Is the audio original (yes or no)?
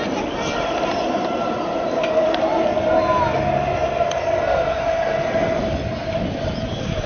yes